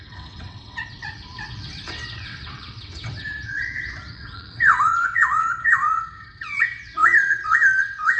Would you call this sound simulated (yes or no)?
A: yes